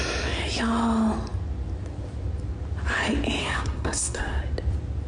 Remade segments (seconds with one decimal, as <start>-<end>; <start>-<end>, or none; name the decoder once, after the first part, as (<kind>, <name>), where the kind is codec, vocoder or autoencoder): 3.4-4.4 (codec, SNAC)